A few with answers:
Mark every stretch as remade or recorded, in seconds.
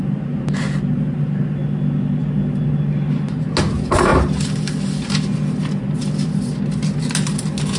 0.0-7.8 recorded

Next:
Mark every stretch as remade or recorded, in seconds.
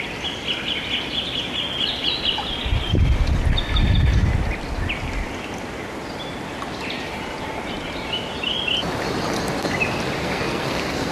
0.0-10.2 recorded; 10.2-11.1 remade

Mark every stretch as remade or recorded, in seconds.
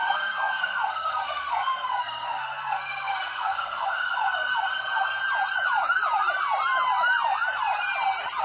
0.0-5.2 remade; 5.2-8.4 recorded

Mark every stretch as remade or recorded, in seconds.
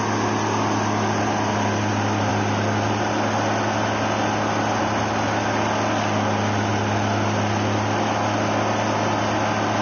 0.0-9.8 recorded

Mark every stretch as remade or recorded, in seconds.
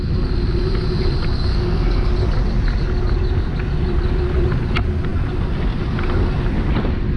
0.0-1.5 recorded; 1.5-2.1 remade; 2.1-7.2 recorded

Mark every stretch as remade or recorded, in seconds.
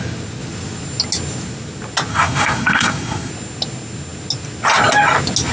0.0-2.1 recorded; 2.1-3.3 remade; 3.3-5.5 recorded